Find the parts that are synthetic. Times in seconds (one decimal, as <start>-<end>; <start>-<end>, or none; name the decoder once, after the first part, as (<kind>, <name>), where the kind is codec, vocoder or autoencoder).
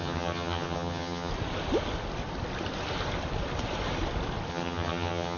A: 0.0-1.3 (vocoder, HiFi-GAN); 4.5-5.4